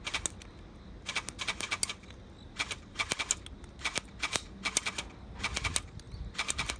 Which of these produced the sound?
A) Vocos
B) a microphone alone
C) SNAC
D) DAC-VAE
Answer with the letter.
B